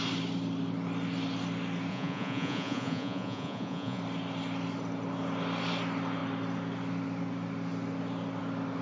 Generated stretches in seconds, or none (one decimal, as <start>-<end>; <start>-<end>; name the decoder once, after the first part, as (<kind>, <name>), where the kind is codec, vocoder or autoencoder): 1.9-4.0 (vocoder, Vocos)